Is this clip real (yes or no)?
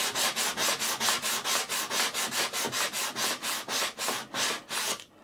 yes